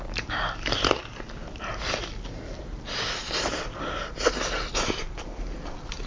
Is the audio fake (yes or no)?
yes